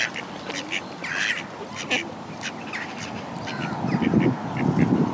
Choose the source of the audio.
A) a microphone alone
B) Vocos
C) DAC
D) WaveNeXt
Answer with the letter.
A